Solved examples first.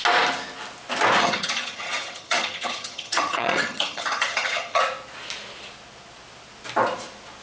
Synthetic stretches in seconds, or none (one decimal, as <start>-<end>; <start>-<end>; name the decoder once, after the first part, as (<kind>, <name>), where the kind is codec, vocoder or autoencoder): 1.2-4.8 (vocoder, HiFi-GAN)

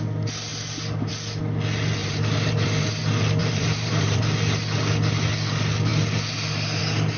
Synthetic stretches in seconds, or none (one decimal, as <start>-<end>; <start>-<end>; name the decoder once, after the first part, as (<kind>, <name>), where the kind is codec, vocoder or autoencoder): 2.0-3.0 (vocoder, BigVGAN v2); 3.4-4.2

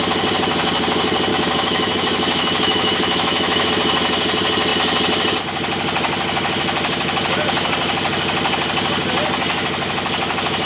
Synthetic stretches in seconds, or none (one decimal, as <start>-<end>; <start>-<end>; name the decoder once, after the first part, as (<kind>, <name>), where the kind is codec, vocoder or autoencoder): 1.3-3.7 (autoencoder, DAC-VAE)

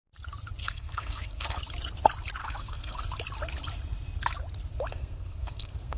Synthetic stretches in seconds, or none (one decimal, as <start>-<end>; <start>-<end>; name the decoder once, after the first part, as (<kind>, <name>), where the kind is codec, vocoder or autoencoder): 0.6-1.6 (codec, SNAC); 2.4-3.0; 4.9-6.0